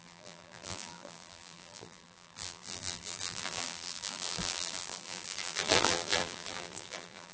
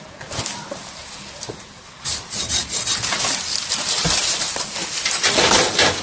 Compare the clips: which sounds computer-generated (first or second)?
first